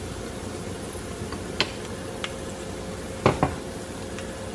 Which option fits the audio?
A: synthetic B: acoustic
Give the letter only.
B